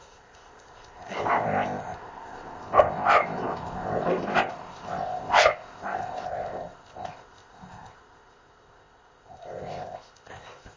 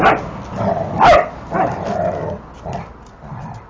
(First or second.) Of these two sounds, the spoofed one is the first